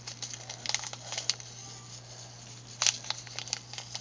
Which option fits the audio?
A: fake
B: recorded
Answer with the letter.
B